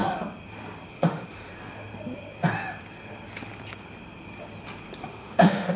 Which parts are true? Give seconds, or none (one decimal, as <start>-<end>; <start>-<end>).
0.0-0.9; 1.5-5.0